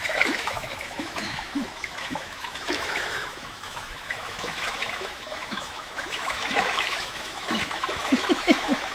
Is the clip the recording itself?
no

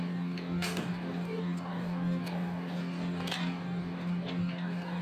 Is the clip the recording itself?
no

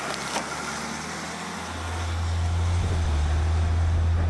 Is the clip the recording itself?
yes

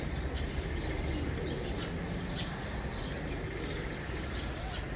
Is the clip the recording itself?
yes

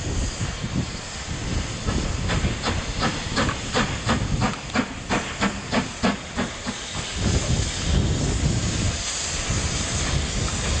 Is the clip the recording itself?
yes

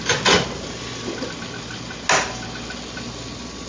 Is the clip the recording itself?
yes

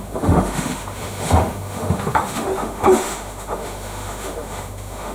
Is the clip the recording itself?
no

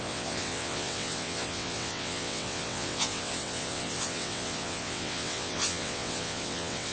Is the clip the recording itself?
no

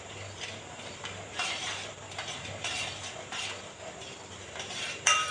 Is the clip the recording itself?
no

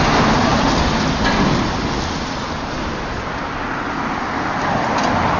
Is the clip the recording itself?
yes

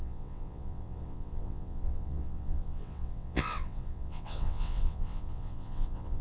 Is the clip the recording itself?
no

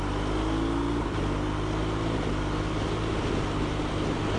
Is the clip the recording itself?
yes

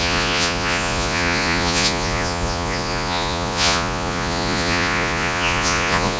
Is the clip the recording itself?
no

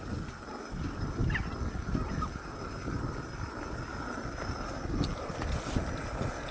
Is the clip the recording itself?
yes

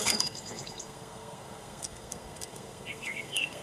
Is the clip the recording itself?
no